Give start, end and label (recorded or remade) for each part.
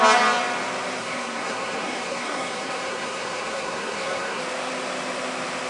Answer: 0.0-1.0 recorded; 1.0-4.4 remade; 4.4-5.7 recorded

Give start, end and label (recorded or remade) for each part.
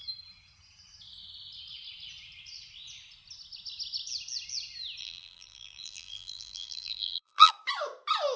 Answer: 0.0-5.0 recorded; 5.0-7.5 remade; 7.5-8.4 recorded